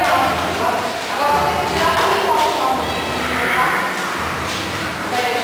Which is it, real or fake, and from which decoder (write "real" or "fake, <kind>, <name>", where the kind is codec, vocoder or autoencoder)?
real